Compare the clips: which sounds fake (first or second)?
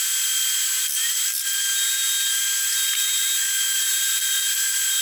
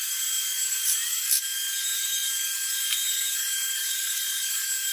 second